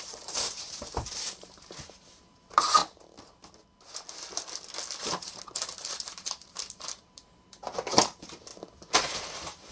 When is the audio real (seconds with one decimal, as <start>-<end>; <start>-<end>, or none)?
2.8-5.0; 8.5-9.2

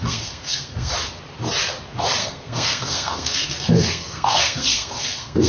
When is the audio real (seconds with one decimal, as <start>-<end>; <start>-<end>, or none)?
0.9-2.2

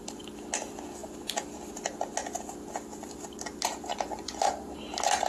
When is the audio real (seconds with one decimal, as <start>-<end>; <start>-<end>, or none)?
0.0-3.9; 4.5-5.3

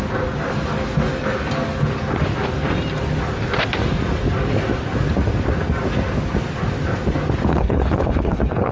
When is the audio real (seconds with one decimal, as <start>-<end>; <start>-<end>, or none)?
0.0-7.5

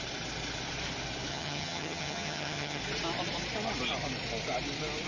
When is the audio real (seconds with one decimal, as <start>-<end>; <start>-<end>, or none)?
0.0-1.3; 2.8-5.1

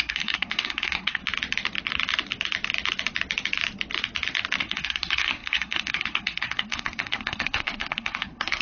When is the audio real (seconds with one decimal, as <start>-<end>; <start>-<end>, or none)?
1.2-4.6

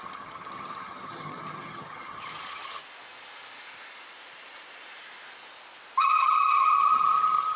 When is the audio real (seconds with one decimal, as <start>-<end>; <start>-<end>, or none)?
2.8-6.0